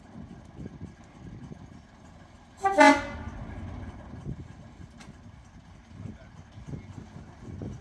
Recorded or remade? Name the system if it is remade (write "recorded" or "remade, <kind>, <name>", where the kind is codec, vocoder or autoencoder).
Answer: recorded